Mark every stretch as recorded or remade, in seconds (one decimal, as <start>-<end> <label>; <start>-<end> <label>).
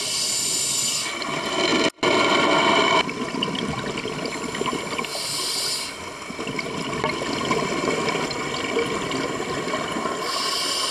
0.0-10.9 recorded